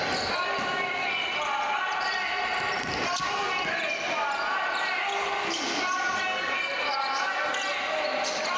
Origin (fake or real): real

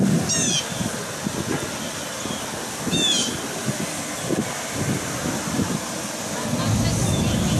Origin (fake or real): real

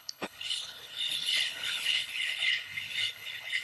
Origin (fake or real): fake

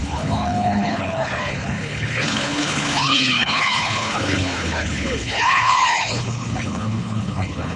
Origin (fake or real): fake